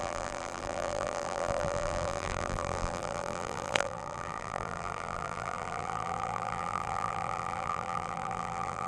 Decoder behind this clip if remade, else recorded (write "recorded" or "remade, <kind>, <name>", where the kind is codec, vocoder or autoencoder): remade, vocoder, BigVGAN v2